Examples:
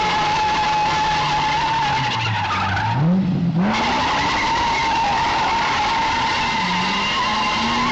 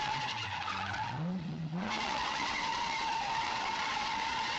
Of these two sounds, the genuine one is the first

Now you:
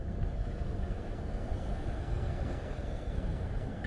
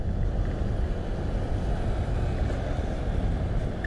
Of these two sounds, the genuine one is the second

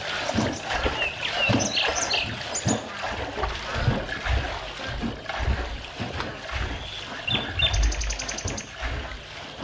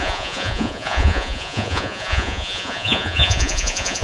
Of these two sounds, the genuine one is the first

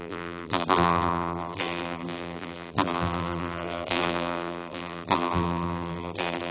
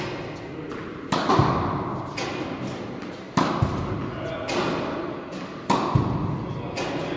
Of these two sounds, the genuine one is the second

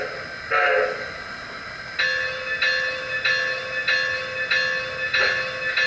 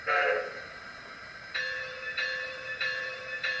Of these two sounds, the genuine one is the first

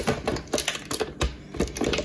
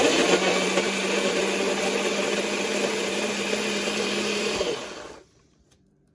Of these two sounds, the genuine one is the first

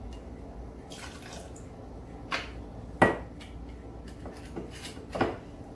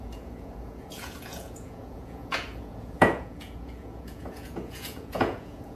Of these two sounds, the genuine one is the first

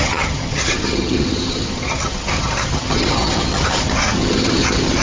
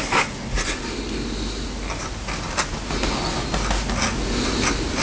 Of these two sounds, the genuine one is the second